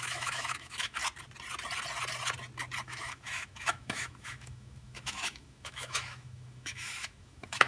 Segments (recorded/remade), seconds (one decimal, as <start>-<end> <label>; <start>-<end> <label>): 0.0-1.0 remade; 1.0-2.8 recorded; 2.8-7.7 remade